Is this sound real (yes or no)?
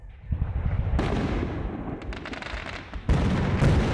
yes